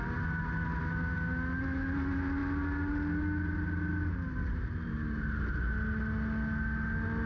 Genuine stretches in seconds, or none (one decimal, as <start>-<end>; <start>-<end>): 0.0-7.3